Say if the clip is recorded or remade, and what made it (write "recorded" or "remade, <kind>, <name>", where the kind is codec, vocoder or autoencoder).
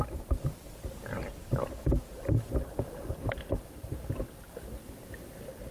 recorded